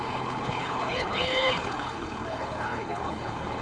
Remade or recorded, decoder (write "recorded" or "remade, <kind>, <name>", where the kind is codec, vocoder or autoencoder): remade, codec, HILCodec